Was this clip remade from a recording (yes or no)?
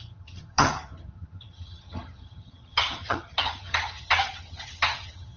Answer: yes